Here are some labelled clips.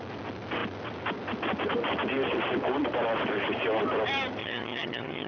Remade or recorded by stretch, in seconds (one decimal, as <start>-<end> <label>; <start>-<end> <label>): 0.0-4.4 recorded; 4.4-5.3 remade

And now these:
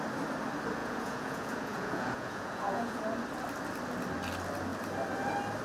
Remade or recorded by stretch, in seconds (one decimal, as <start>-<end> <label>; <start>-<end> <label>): 0.0-0.8 recorded; 0.8-3.0 remade; 3.0-5.6 recorded

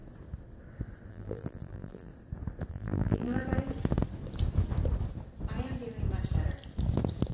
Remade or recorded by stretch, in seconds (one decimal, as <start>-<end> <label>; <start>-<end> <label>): 0.0-1.1 recorded; 1.1-2.1 remade; 2.1-2.7 recorded; 2.7-3.4 remade; 3.4-7.3 recorded

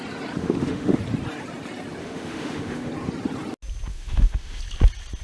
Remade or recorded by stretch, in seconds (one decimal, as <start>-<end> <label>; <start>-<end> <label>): 0.0-0.4 recorded; 0.4-1.0 remade; 1.0-2.0 recorded; 2.0-2.9 remade; 2.9-3.9 recorded; 3.9-4.6 remade; 4.6-5.2 recorded

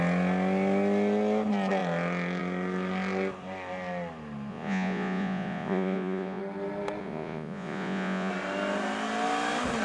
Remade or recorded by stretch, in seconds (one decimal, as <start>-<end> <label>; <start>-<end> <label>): 0.0-4.5 recorded; 4.5-6.4 remade; 6.4-7.0 recorded; 7.0-8.3 remade; 8.3-9.8 recorded

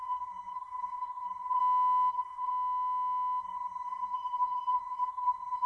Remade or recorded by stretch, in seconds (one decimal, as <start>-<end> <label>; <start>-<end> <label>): 0.0-1.6 remade; 1.6-2.1 recorded; 2.1-2.5 remade; 2.5-3.4 recorded; 3.4-5.7 remade

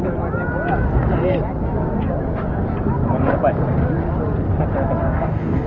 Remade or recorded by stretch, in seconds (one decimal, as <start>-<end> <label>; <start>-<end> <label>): 0.0-5.0 recorded; 5.0-5.7 remade

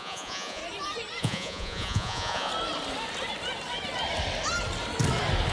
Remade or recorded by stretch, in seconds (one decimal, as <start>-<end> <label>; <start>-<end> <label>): 0.0-0.6 remade; 0.6-1.2 recorded; 1.2-2.5 remade; 2.5-5.5 recorded